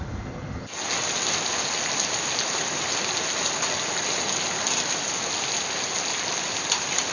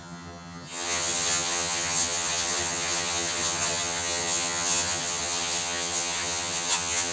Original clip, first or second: first